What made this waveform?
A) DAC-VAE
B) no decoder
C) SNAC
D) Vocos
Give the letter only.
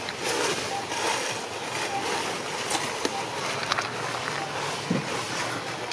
B